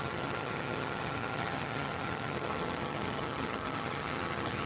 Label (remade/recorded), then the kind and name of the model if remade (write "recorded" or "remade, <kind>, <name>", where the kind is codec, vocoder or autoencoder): remade, vocoder, HiFi-GAN